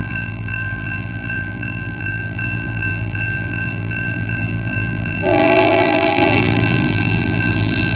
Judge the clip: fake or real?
fake